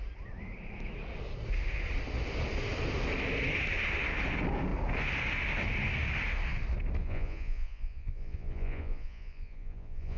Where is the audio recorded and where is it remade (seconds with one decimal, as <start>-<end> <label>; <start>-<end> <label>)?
0.0-7.0 recorded; 7.0-10.2 remade